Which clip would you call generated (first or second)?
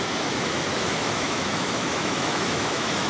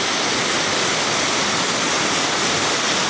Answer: first